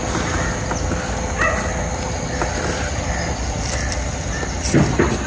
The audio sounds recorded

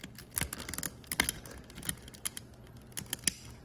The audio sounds recorded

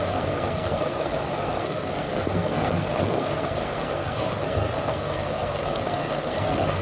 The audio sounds remade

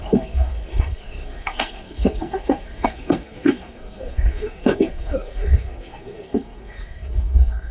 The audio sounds remade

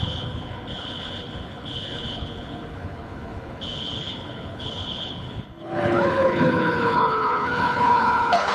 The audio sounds remade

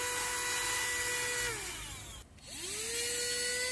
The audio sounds recorded